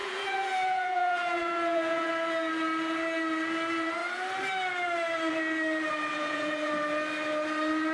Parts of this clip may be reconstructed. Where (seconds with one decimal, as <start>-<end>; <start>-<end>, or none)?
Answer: 0.0-2.1; 6.1-6.7